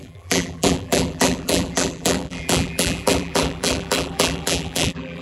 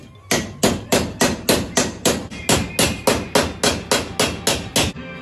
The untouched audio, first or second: second